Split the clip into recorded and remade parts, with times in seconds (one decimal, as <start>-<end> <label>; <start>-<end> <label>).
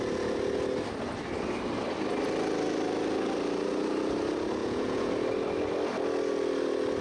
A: 0.0-4.6 recorded; 4.6-5.1 remade; 5.1-7.0 recorded